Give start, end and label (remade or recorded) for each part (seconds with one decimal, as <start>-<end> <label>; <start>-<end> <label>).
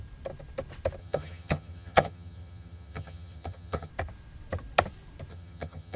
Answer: 0.0-1.0 recorded; 1.0-3.9 remade; 3.9-5.3 recorded; 5.3-6.0 remade